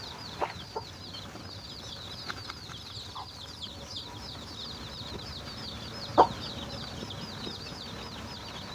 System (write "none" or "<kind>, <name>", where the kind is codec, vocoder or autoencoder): none